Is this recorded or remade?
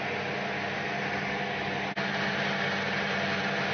recorded